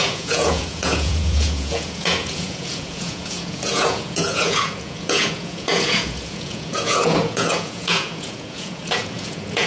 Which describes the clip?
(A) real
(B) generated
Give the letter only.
B